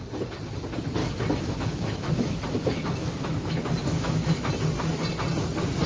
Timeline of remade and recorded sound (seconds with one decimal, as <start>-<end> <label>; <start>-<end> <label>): 0.0-1.0 recorded; 1.0-4.5 remade; 4.5-5.9 recorded